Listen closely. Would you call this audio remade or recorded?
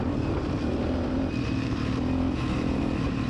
remade